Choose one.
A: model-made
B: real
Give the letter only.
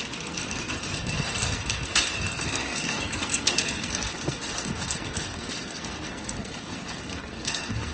A